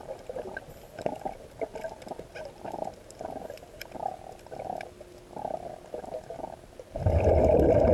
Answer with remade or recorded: recorded